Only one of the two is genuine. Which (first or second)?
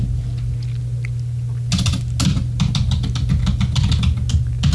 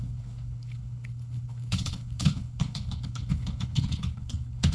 first